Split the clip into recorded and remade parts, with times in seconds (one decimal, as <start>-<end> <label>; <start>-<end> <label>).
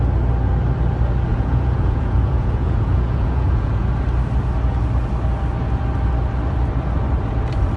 0.0-1.3 recorded; 1.3-3.9 remade; 3.9-7.8 recorded